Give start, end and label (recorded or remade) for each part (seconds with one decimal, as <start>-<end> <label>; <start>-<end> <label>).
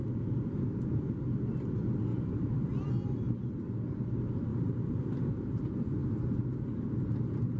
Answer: 0.0-2.1 recorded; 2.1-2.9 remade; 2.9-4.5 recorded; 4.5-5.3 remade; 5.3-7.6 recorded